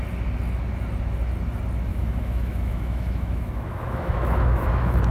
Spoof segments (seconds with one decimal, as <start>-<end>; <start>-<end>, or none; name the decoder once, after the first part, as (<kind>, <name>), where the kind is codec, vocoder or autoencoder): 1.9-5.1 (autoencoder, DAC-VAE)